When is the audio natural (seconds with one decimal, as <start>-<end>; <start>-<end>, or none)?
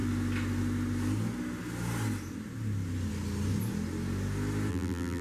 0.0-4.7